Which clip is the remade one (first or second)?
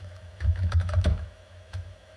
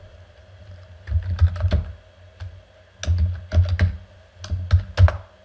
first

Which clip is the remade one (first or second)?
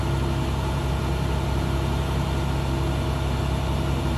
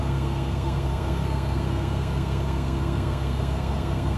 second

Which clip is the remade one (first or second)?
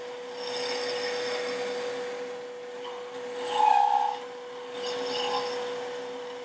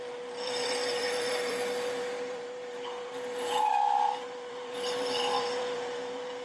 second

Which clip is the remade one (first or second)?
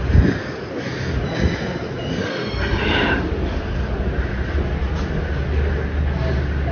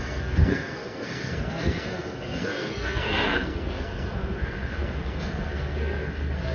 second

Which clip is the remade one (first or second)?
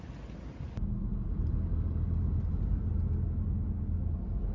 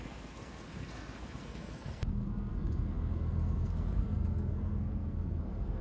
second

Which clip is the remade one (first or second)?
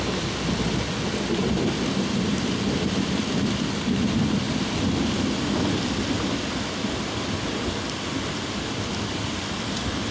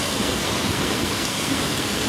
second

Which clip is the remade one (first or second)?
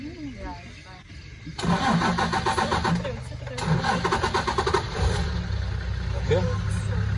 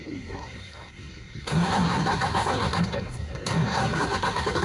second